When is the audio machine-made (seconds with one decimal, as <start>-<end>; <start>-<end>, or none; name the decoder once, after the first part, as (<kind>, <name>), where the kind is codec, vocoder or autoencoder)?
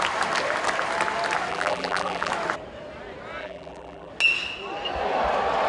1.5-2.3 (vocoder, BigVGAN v2); 3.4-4.1